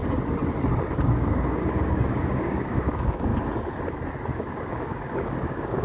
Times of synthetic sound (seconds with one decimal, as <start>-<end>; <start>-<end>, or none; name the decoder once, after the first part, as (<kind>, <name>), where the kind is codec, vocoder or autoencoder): 0.9-3.3 (codec, DAC); 4.4-5.8